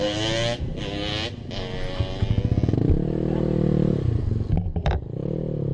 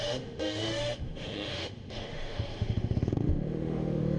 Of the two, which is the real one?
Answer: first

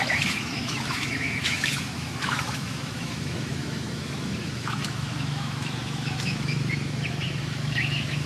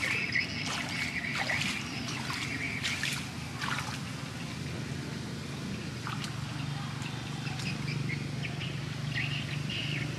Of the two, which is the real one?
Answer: second